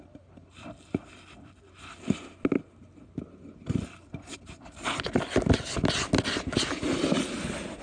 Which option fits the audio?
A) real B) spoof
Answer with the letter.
A